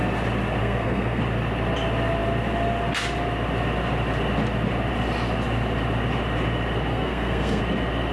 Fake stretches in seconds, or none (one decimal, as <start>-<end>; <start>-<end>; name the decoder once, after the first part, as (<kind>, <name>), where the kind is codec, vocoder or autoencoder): 0.6-1.2 (codec, SNAC); 6.9-7.6